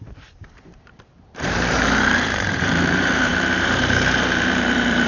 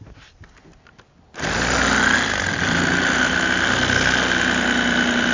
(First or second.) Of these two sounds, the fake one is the first